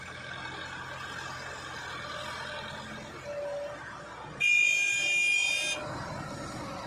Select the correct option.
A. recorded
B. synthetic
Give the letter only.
A